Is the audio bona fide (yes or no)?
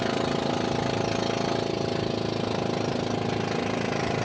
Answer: yes